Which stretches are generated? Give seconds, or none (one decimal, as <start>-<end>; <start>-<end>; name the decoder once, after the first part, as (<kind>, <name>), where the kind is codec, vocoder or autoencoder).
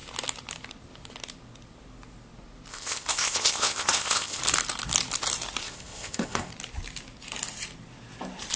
2.7-4.4 (codec, ZipCodec); 5.6-6.5